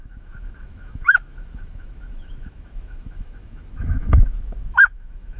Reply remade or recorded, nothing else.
remade